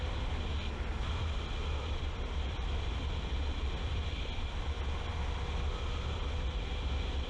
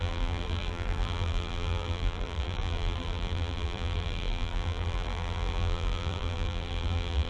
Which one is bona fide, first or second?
first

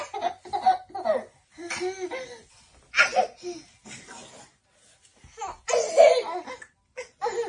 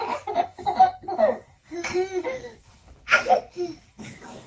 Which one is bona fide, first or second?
first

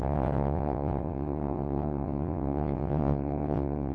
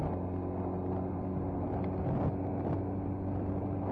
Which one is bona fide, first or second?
second